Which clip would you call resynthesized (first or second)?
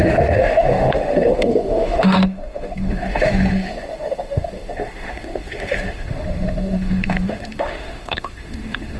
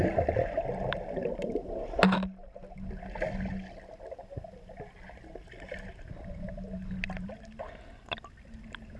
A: first